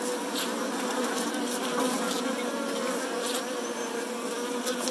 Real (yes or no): yes